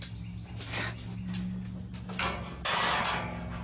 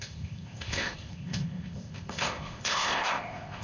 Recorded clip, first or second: first